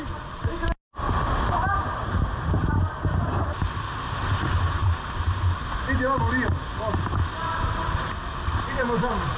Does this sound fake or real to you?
real